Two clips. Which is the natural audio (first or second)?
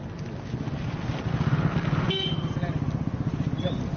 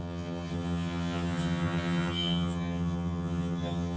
first